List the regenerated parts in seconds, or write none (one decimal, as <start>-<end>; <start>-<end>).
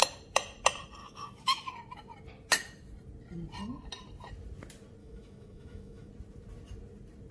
1.0-1.7; 5.0-6.1